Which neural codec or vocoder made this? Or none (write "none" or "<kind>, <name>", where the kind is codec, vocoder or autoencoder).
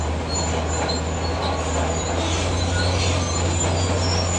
none